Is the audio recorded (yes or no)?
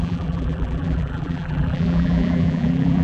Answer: no